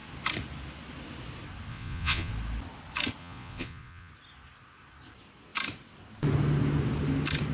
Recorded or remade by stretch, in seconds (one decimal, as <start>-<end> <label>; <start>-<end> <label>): 0.0-1.7 recorded; 1.7-2.3 remade; 2.3-3.2 recorded; 3.2-4.1 remade; 4.1-7.5 recorded